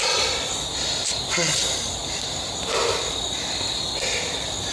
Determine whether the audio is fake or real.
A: real